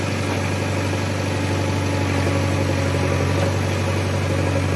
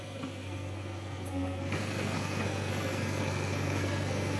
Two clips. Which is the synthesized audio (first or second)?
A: second